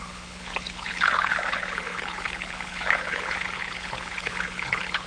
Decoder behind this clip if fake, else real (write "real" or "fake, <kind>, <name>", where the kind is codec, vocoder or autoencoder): fake, codec, HILCodec